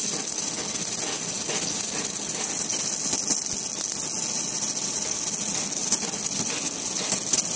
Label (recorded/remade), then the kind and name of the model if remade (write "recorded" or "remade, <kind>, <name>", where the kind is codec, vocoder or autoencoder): recorded